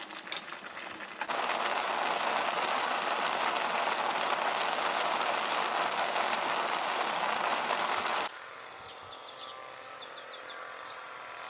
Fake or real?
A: real